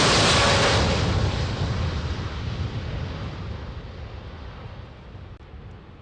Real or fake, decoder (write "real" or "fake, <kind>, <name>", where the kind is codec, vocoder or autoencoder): real